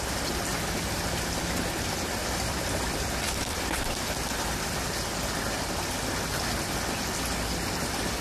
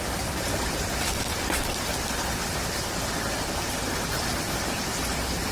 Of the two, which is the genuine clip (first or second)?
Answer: first